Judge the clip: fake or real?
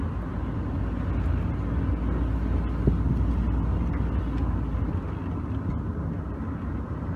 real